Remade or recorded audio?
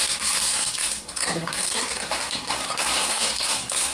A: remade